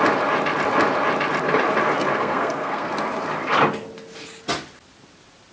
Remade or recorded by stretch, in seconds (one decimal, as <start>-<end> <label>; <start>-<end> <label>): 0.0-2.1 recorded; 2.1-2.9 remade; 2.9-5.5 recorded